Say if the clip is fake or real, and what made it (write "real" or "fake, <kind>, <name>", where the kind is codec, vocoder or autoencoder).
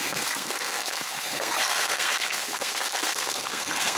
fake, codec, SNAC